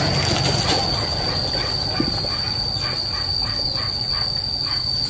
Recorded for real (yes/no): yes